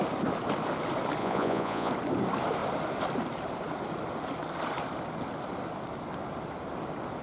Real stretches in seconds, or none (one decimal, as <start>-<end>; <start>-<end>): 0.0-1.2; 1.9-7.2

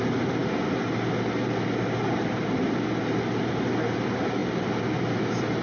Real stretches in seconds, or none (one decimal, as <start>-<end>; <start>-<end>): 0.0-5.6

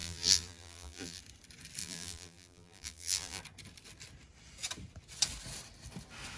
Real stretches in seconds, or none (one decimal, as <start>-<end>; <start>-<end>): 1.2-1.8; 3.4-6.4

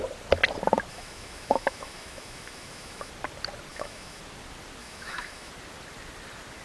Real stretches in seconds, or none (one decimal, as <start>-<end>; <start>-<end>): 0.0-0.9; 3.1-3.7; 4.2-4.8; 5.5-6.6